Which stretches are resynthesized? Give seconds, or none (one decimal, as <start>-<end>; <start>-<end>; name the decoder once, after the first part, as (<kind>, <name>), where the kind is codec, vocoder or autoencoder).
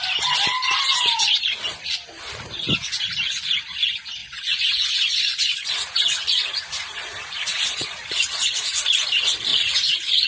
4.2-6.0 (vocoder, Vocos); 7.3-7.9; 9.5-10.3